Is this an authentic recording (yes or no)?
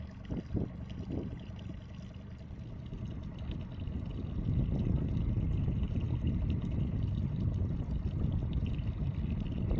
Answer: yes